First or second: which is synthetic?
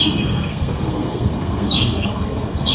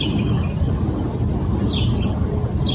first